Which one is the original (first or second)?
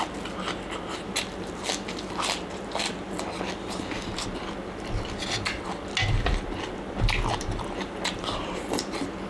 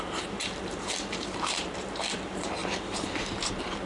first